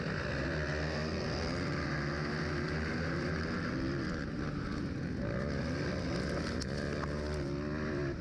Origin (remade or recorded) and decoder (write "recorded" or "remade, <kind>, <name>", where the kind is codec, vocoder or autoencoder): recorded